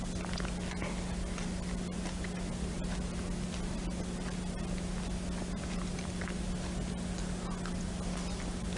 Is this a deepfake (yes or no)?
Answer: no